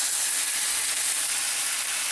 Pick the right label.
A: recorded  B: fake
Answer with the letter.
A